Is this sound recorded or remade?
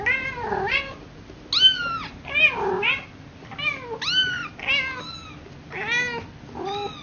recorded